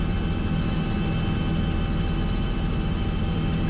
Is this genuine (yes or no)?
yes